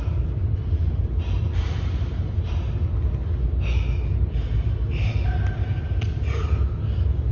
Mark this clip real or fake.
real